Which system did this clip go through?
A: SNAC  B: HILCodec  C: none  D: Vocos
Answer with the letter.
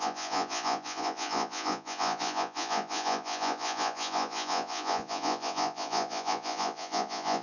D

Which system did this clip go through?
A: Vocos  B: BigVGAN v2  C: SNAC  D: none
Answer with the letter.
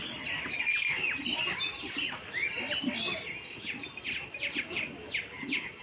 D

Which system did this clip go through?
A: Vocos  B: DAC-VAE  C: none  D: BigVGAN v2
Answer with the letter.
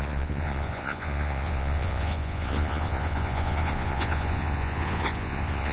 A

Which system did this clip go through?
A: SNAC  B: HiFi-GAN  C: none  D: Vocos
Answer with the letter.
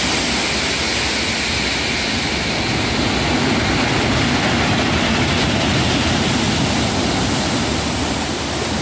C